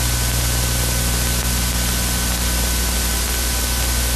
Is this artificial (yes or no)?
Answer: no